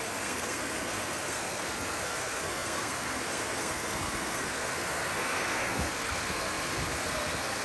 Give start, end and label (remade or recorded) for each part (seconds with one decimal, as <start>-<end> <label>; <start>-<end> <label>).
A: 0.0-7.6 remade